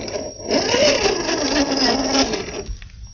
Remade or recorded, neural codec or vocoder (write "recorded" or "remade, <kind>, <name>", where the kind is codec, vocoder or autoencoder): recorded